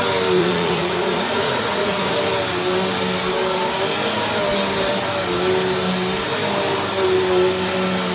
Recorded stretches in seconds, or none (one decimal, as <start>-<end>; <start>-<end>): 0.0-0.4; 2.1-8.1